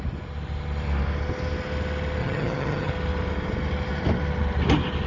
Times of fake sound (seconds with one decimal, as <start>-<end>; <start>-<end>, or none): 2.2-2.9